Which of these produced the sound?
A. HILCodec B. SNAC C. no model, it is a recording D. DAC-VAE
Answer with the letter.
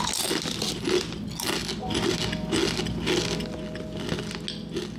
C